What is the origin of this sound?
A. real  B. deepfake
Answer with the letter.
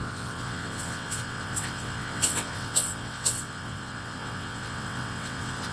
B